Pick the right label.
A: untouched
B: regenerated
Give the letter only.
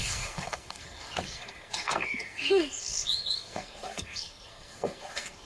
B